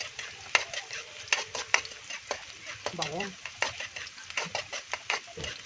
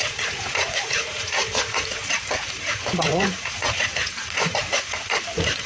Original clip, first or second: first